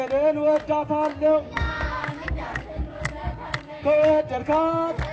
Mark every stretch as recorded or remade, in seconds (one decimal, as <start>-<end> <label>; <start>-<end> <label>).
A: 0.0-1.1 recorded; 1.1-4.2 remade; 4.2-5.1 recorded